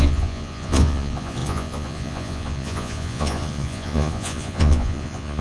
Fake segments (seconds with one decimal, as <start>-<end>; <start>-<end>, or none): 0.0-5.4